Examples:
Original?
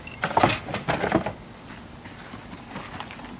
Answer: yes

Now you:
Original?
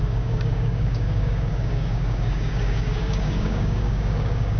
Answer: no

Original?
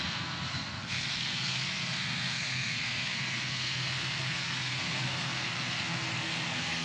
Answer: no